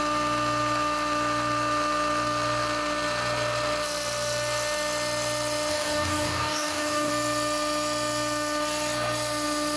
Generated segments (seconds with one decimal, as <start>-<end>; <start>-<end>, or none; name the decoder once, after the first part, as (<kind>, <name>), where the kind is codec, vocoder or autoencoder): 5.7-7.1 (codec, DAC)